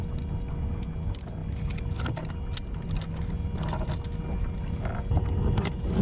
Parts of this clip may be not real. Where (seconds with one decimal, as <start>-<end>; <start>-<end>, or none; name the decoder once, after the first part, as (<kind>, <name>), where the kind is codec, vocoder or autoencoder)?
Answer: none